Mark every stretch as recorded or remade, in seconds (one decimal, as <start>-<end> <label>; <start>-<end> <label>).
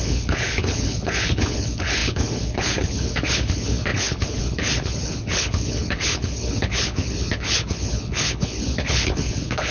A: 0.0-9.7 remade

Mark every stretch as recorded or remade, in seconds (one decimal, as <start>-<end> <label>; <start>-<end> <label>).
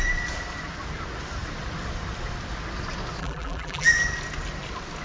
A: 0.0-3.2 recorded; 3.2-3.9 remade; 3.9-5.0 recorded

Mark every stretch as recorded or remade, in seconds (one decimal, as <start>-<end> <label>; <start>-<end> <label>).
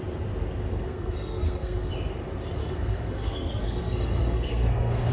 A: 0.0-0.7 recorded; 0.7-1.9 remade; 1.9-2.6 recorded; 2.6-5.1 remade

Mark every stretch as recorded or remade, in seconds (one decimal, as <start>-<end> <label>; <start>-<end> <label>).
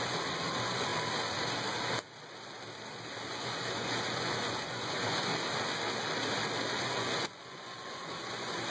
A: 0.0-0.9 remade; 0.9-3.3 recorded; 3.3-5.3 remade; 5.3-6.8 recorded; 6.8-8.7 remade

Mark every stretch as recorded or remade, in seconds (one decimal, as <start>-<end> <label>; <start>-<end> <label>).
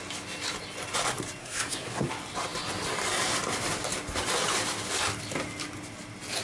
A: 0.0-1.4 recorded; 1.4-2.1 remade; 2.1-6.4 recorded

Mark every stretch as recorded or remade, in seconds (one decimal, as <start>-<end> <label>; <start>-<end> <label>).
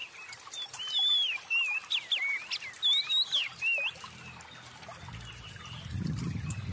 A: 0.0-6.7 recorded